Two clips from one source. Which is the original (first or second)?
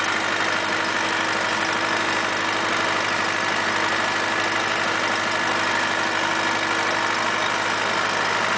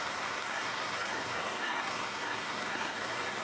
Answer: first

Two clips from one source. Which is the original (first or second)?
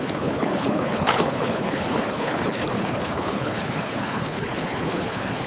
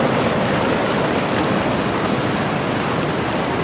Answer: second